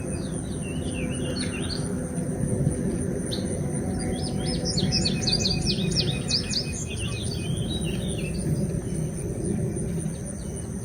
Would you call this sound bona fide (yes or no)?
yes